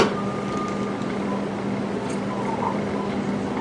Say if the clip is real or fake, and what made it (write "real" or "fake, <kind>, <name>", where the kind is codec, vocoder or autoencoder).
real